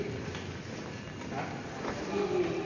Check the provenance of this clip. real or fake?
real